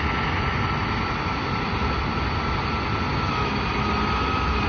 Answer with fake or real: real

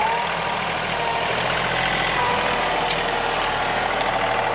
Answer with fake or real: real